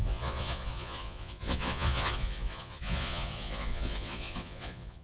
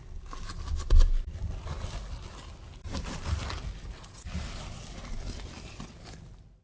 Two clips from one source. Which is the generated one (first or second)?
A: first